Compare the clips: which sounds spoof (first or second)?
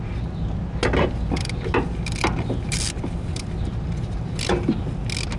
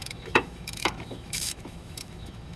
second